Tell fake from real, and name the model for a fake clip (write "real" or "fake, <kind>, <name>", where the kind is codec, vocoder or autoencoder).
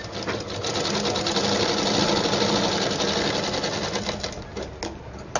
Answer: real